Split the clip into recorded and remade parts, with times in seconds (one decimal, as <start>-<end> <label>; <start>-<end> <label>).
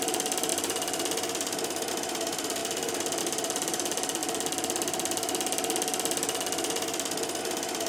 0.0-4.2 remade; 4.2-7.4 recorded; 7.4-7.9 remade